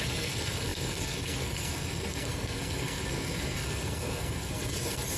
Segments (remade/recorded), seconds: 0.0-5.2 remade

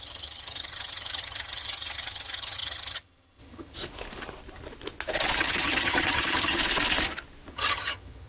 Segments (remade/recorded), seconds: 0.0-3.8 remade; 3.8-5.4 recorded; 5.4-6.6 remade; 6.6-7.5 recorded; 7.5-8.3 remade